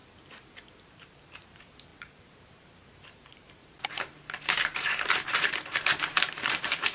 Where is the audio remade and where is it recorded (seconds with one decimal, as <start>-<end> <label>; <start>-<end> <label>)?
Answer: 0.0-6.9 remade